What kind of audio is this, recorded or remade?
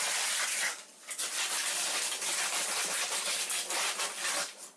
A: recorded